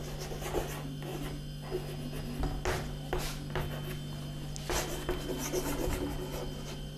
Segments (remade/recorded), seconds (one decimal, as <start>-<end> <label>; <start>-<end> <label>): 0.0-7.0 recorded